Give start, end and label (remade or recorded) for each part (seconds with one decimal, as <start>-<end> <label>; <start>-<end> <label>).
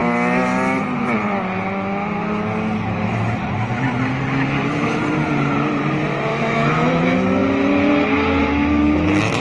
0.0-6.3 recorded; 6.3-7.0 remade; 7.0-9.4 recorded